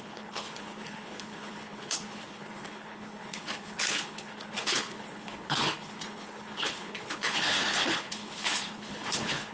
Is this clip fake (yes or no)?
yes